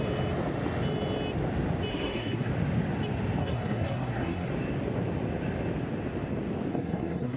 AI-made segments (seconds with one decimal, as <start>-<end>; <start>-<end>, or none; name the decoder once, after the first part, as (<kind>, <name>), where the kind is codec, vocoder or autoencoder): 1.9-2.5 (codec, SNAC); 3.4-4.5; 6.7-7.4

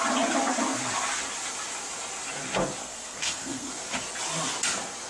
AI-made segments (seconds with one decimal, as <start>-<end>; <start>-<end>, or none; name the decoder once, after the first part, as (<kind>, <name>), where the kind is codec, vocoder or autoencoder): 2.8-3.7 (codec, SNAC)